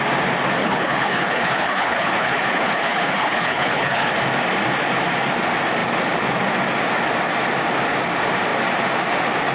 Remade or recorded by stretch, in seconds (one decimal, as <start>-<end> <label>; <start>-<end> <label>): 0.0-0.6 recorded; 0.6-4.1 remade; 4.1-9.5 recorded